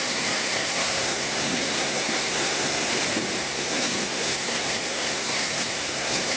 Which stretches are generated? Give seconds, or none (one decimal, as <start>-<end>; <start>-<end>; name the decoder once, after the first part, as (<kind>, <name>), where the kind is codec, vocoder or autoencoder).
0.0-2.9 (codec, SNAC); 3.4-6.4